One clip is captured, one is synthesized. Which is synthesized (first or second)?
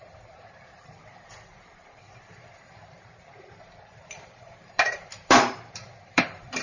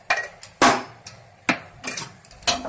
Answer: first